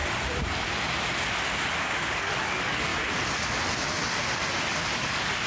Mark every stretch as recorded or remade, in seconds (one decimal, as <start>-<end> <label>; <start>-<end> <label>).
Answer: 0.0-1.8 recorded; 1.8-2.9 remade; 2.9-5.0 recorded; 5.0-5.5 remade